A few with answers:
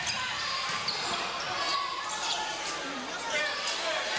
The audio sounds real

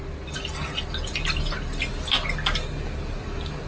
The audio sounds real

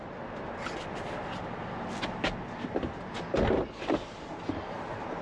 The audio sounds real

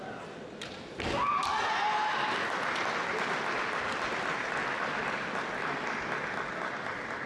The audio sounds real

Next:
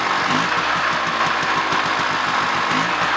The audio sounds real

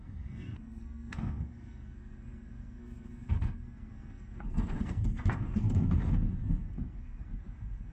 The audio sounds fake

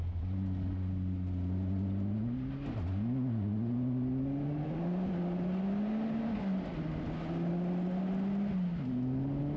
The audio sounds real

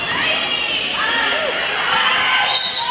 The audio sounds real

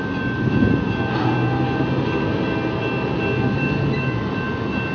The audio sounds real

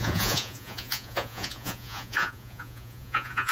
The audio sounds fake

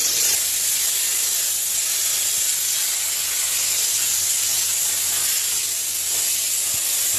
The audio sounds real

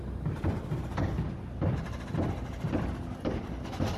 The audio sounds real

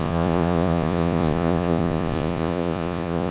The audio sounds fake